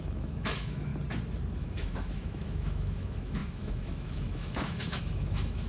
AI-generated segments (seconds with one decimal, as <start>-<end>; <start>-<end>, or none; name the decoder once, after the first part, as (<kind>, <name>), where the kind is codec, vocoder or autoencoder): 0.0-0.9 (autoencoder, DAC-VAE); 1.6-5.7